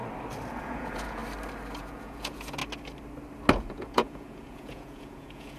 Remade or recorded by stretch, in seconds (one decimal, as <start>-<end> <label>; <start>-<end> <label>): 0.0-0.6 recorded; 0.6-1.2 remade; 1.2-1.8 recorded; 1.8-2.6 remade; 2.6-3.5 recorded; 3.5-5.6 remade